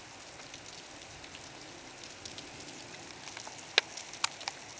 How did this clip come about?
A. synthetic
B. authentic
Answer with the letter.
B